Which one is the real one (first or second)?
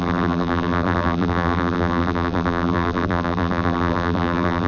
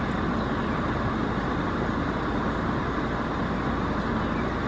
second